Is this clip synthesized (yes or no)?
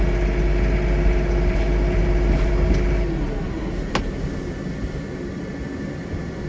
no